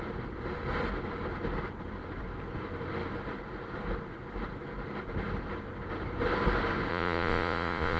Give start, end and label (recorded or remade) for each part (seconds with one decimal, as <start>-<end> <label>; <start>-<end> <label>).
0.0-6.9 recorded; 6.9-8.0 remade